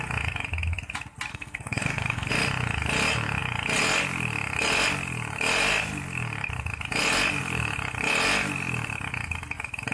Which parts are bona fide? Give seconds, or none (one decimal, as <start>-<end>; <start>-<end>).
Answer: 0.0-1.3; 2.3-9.9